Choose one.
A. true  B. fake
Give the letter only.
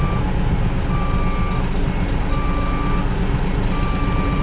A